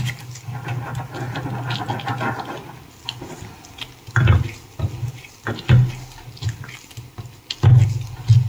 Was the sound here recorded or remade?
recorded